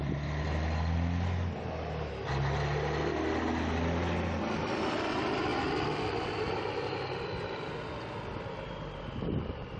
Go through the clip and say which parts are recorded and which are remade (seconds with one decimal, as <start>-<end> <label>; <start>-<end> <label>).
0.0-9.8 recorded